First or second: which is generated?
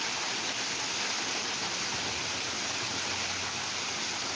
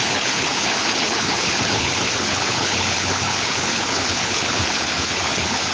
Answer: second